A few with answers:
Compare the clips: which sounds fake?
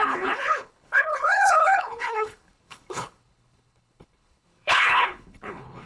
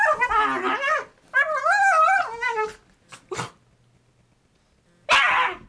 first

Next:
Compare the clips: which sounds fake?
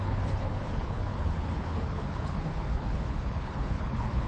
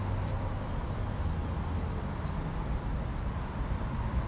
first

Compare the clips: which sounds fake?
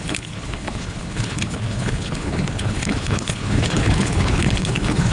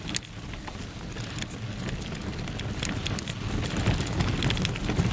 first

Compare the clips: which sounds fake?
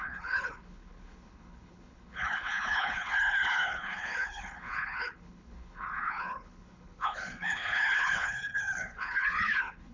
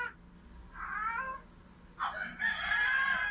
first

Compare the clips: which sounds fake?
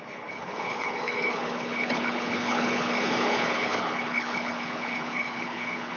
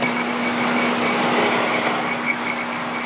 first